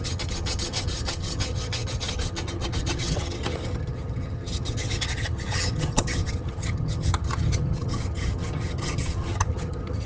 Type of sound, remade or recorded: remade